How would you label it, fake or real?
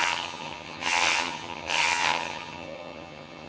fake